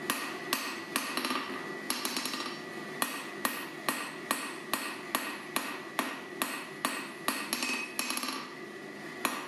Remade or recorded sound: recorded